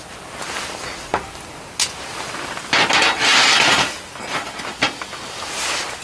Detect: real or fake real